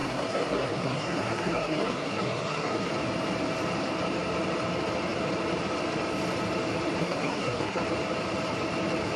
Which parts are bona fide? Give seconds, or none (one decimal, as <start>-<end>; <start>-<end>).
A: 2.9-7.0; 7.8-9.2